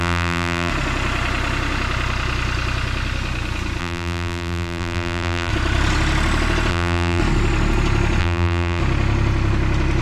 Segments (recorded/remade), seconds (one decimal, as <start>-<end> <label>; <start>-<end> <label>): 0.0-0.7 remade; 0.7-3.8 recorded; 3.8-5.5 remade; 5.5-6.7 recorded; 6.7-7.2 remade; 7.2-8.2 recorded; 8.2-8.8 remade; 8.8-10.0 recorded